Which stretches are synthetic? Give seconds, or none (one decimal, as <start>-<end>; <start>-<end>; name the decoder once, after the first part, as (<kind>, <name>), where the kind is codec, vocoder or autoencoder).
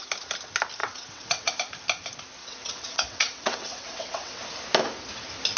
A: 0.8-1.6 (vocoder, WaveNeXt); 2.4-4.4